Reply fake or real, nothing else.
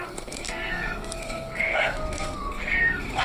fake